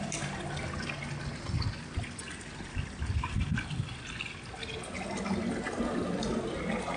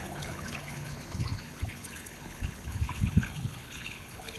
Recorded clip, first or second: first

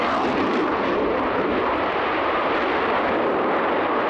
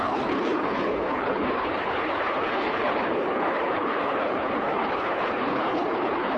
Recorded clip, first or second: first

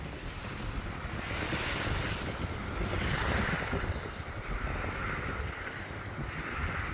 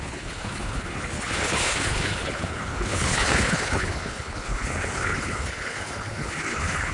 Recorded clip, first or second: first